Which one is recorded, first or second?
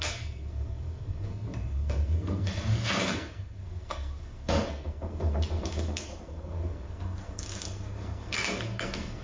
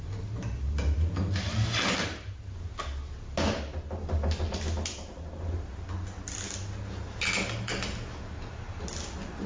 second